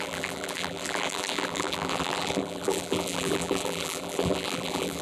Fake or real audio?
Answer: fake